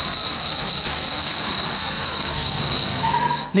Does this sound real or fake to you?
fake